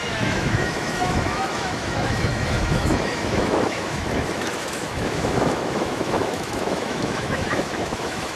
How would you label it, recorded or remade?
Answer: remade